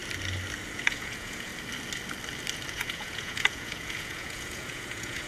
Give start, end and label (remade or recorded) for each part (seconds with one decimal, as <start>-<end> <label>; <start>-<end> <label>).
0.0-0.7 recorded; 0.7-1.5 remade; 1.5-2.7 recorded; 2.7-5.3 remade